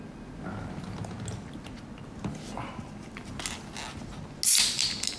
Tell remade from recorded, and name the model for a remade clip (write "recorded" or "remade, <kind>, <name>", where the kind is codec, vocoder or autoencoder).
recorded